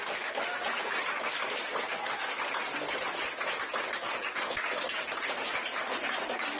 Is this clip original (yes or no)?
yes